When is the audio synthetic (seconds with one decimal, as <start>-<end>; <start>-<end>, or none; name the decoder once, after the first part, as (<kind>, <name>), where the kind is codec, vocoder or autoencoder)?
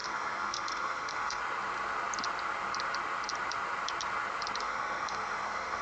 0.0-1.4 (codec, SNAC); 4.6-5.8